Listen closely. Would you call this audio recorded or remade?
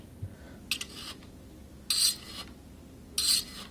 recorded